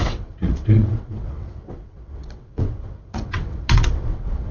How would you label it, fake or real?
fake